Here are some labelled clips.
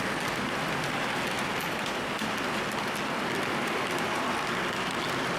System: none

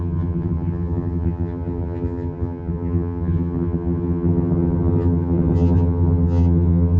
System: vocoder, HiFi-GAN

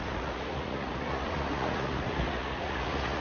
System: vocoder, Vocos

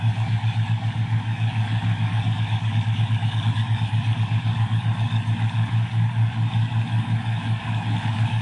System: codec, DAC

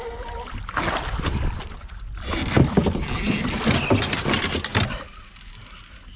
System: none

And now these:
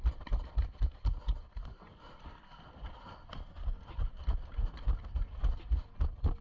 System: none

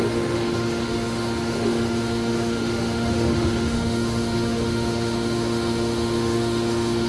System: autoencoder, DAC-VAE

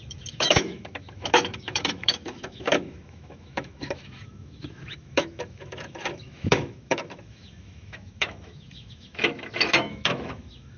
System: autoencoder, DAC-VAE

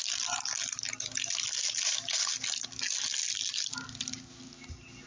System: none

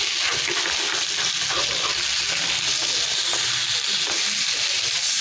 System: none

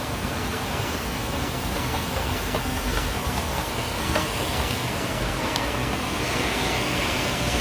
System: codec, SNAC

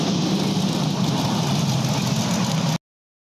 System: none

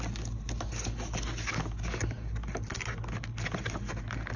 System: none